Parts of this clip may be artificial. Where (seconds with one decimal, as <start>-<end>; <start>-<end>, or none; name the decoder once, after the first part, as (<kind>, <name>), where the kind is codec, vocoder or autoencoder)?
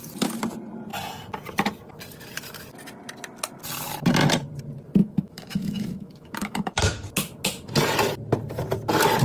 5.0-6.8 (autoencoder, DAC-VAE)